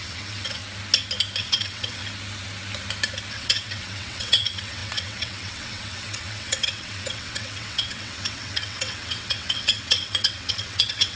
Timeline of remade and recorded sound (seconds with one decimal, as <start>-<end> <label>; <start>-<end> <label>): 0.0-0.6 remade; 0.6-1.4 recorded; 1.4-2.0 remade; 2.0-3.3 recorded; 3.3-11.2 remade